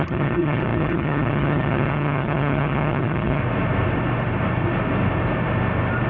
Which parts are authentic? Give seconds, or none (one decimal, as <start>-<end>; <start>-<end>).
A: 3.4-6.1